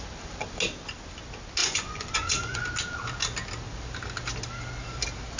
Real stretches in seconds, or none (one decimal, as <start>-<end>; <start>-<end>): 0.0-1.6; 2.6-5.4